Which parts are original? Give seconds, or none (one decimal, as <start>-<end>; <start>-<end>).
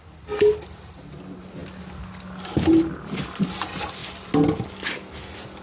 0.0-5.6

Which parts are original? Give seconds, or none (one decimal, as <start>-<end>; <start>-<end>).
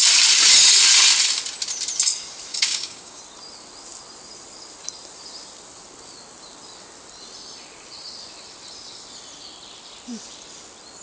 0.0-2.5; 3.2-11.0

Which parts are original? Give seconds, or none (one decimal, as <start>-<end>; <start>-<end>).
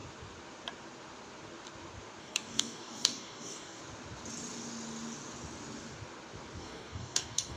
0.0-2.2; 3.8-6.6